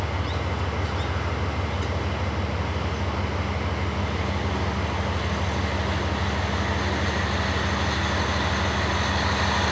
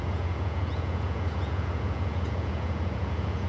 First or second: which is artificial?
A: second